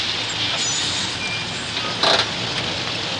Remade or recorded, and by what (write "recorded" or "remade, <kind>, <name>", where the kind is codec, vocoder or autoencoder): recorded